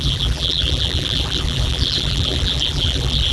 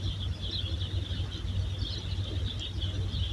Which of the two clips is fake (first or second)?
first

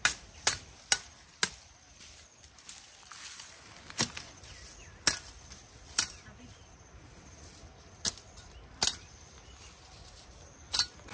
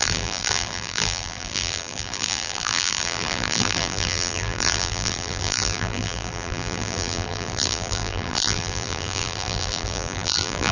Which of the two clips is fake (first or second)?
second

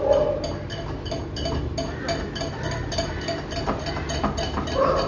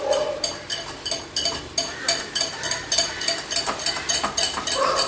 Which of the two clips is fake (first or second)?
second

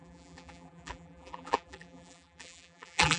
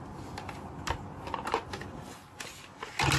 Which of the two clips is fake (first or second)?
first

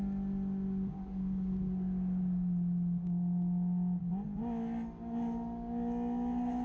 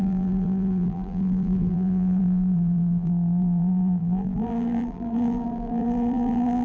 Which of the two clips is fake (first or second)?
second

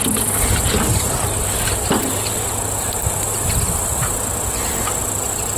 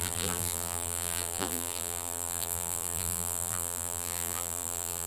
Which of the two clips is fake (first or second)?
second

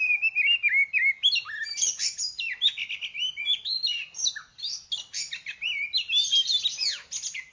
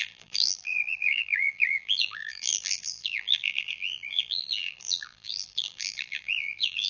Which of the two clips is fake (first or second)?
second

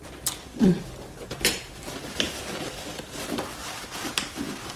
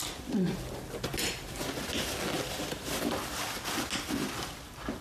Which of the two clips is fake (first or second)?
first